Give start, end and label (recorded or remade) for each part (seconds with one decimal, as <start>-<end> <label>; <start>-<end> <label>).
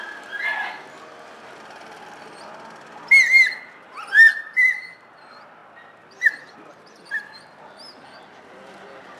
0.0-9.2 recorded